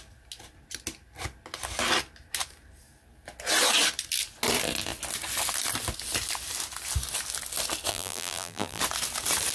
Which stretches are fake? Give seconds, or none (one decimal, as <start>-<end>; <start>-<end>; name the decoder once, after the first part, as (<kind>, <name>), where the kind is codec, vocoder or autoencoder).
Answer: 7.9-8.8 (vocoder, BigVGAN v2)